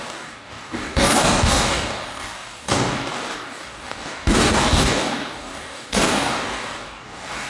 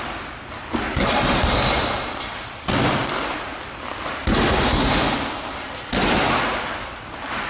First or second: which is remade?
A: first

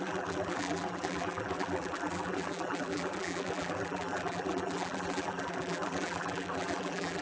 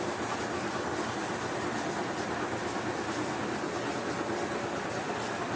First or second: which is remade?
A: first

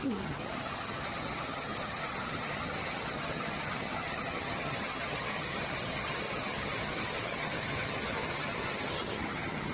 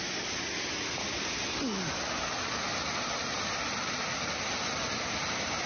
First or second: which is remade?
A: first